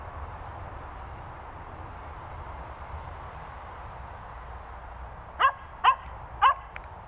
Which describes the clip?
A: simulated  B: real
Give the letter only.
B